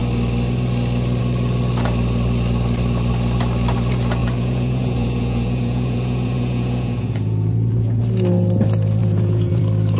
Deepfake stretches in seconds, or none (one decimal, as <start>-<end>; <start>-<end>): 4.2-8.0; 9.0-9.6